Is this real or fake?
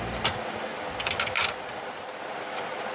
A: real